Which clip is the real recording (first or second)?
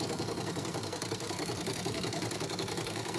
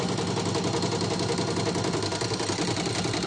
second